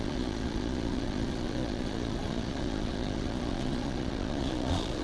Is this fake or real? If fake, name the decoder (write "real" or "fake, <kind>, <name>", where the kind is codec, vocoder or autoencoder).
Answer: fake, vocoder, Vocos